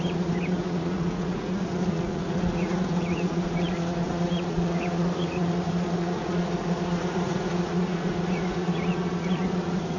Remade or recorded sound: remade